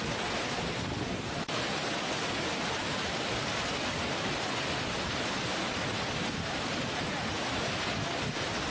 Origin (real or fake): real